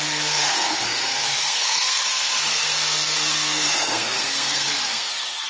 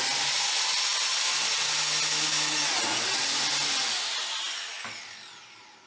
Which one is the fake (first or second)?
first